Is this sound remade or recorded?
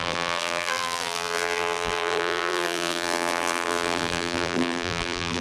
remade